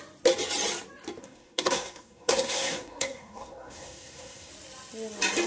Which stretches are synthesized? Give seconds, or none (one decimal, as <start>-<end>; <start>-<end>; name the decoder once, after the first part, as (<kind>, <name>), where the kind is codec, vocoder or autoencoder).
1.2-4.5 (codec, SNAC)